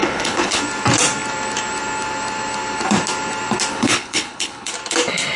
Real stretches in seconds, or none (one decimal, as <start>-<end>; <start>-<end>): 0.6-3.7; 4.7-5.4